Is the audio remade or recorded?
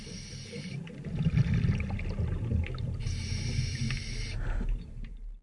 recorded